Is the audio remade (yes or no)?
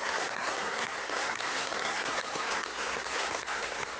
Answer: yes